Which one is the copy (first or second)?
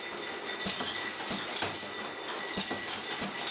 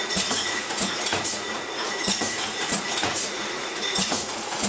second